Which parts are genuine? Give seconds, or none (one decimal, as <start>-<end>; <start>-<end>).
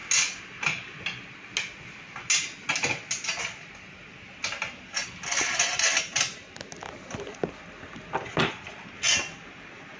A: 0.0-10.0